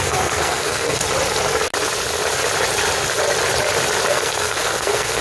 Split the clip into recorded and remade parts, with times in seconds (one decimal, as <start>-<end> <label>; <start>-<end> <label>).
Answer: 0.0-1.0 remade; 1.0-4.1 recorded; 4.1-5.2 remade